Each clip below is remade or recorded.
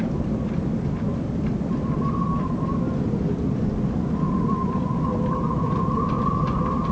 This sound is recorded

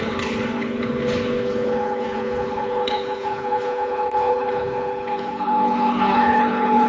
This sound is remade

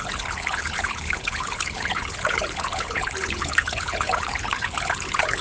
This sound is remade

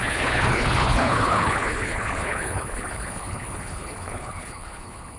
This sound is remade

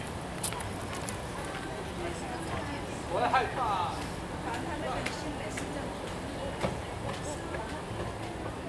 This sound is recorded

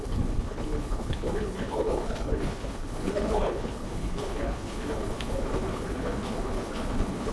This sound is remade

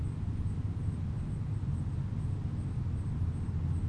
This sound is recorded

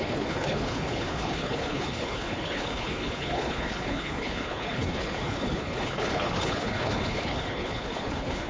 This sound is remade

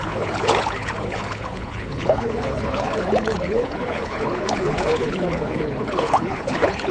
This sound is remade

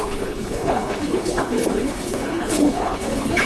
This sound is remade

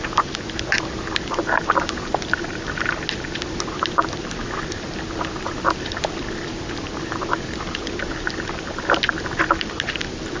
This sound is recorded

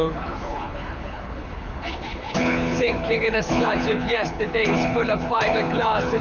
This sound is remade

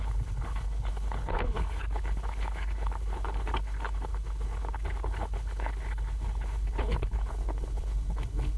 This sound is remade